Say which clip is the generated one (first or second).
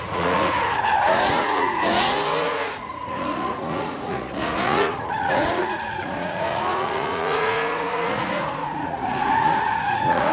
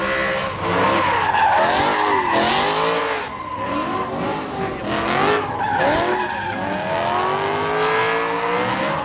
first